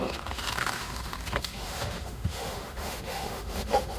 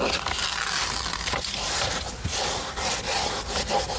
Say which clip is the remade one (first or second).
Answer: first